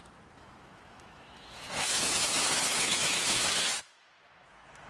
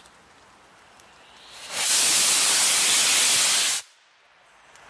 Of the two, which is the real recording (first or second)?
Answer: second